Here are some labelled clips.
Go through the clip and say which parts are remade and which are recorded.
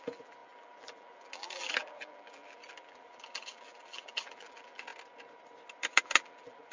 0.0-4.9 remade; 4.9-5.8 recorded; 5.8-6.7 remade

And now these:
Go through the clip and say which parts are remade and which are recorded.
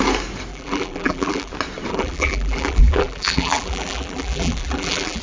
0.0-0.5 recorded; 0.5-1.5 remade; 1.5-1.9 recorded; 1.9-5.2 remade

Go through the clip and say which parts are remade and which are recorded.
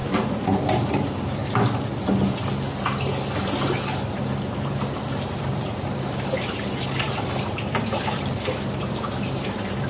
0.0-1.4 remade; 1.4-4.0 recorded; 4.0-9.9 remade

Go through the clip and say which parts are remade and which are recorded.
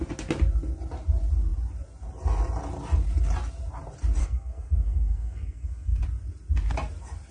0.0-4.2 recorded; 4.2-6.0 remade; 6.0-7.3 recorded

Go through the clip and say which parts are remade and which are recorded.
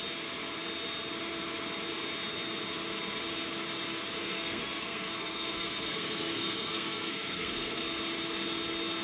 0.0-4.2 recorded; 4.2-7.8 remade; 7.8-9.0 recorded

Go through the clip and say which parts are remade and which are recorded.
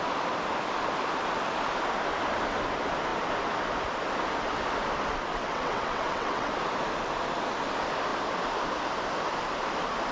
0.0-5.3 recorded; 5.3-6.5 remade; 6.5-10.1 recorded